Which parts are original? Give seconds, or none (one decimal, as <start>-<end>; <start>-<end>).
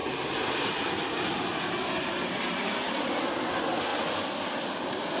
0.0-5.2